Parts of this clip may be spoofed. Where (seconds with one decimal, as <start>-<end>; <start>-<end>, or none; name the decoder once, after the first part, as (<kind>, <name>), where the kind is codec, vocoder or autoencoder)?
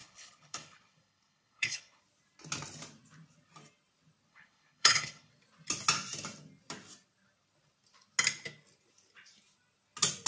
0.0-2.0 (codec, HILCodec); 4.3-5.3